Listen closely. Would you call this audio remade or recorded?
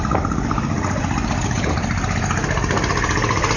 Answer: recorded